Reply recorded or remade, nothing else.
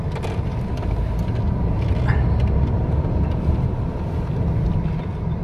recorded